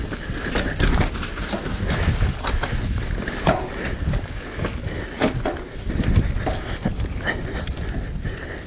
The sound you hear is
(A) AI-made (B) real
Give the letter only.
B